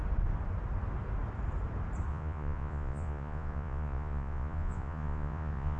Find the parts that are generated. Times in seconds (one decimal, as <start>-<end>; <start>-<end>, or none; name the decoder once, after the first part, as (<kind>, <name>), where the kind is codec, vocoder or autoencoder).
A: 2.1-5.8 (vocoder, Vocos)